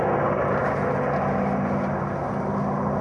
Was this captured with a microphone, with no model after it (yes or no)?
yes